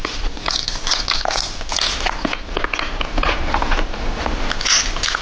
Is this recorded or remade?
recorded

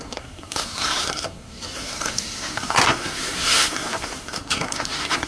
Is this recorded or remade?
remade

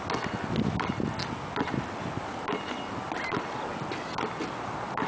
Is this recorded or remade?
recorded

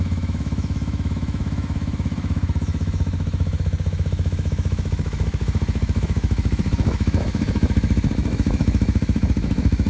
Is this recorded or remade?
remade